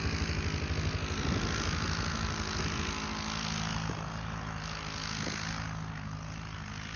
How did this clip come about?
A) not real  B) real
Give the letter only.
B